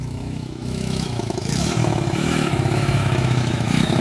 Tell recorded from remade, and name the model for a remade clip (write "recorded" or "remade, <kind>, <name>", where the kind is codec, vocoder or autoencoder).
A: remade, autoencoder, DAC-VAE